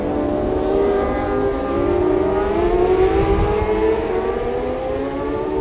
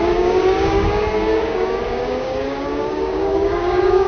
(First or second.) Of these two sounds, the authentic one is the first